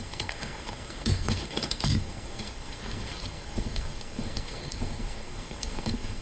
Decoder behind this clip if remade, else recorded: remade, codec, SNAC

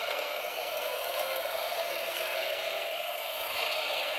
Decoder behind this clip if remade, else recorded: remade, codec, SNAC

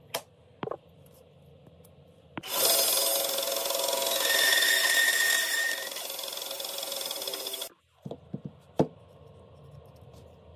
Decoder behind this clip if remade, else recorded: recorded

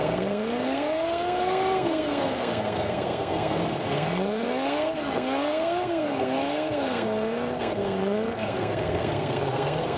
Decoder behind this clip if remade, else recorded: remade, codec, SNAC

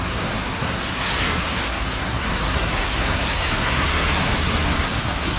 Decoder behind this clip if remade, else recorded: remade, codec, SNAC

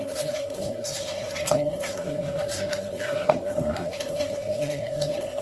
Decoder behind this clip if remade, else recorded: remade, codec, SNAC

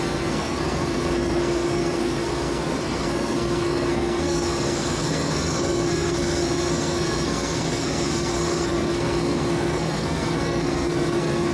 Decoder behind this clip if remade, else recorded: remade, codec, SNAC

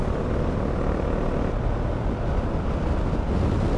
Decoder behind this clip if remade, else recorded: recorded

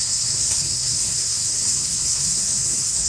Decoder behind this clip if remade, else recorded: remade, codec, SNAC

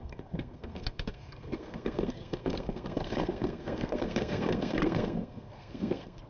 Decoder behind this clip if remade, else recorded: remade, codec, SNAC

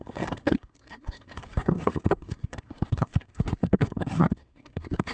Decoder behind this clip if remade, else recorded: remade, codec, SNAC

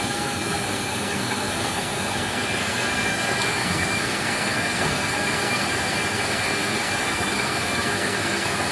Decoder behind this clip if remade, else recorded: remade, codec, SNAC